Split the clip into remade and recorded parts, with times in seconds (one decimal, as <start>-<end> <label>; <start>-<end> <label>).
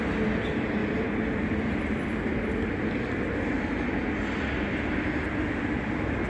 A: 0.0-6.3 recorded